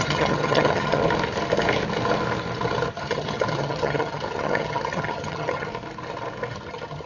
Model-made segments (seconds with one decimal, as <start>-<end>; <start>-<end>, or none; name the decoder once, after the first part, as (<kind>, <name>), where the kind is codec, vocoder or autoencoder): 0.0-1.0 (vocoder, HiFi-GAN); 2.9-5.7; 6.5-7.1